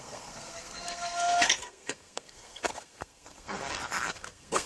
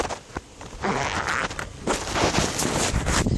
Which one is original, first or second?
second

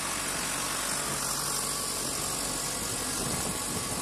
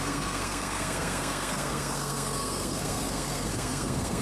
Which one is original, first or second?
first